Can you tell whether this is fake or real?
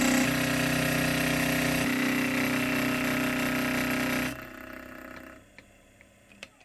real